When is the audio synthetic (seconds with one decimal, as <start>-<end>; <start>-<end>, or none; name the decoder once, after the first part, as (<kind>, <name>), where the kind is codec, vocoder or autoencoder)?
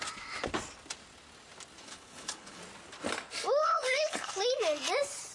1.8-2.6 (codec, HILCodec); 3.6-4.3